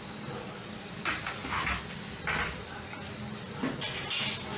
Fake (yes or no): no